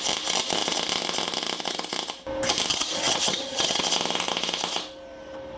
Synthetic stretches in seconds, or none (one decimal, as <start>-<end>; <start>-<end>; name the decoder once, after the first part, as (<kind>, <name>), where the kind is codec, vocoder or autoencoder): 2.7-3.8 (vocoder, HiFi-GAN)